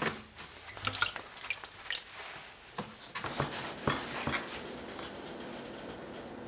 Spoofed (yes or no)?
no